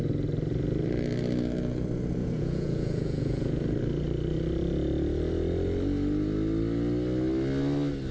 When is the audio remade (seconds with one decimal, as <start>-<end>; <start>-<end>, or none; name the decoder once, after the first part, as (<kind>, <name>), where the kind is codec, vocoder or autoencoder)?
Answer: 2.2-3.6 (vocoder, Vocos)